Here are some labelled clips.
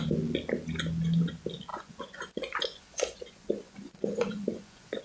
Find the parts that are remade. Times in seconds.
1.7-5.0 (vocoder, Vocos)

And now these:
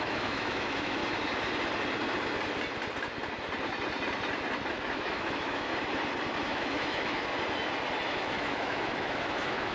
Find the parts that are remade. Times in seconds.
0.0-1.0 (autoencoder, DAC-VAE); 4.7-5.7; 6.4-7.3; 8.1-9.7

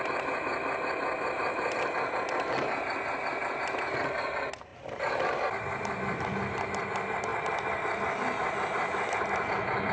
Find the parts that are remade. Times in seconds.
none